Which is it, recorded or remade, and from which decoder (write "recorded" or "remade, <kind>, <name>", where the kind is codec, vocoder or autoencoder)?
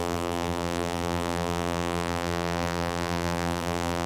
remade, vocoder, BigVGAN v2